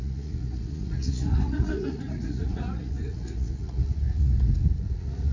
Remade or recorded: remade